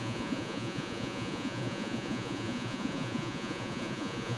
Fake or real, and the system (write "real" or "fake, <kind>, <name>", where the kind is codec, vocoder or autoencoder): fake, vocoder, Vocos